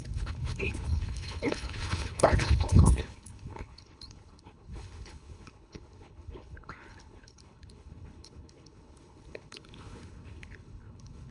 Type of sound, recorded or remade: remade